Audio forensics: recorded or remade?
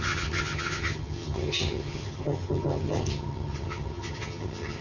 remade